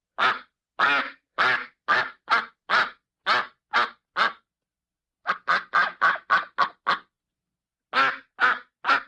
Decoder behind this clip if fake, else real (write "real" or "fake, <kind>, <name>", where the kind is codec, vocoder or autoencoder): real